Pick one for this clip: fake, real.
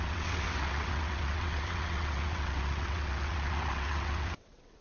fake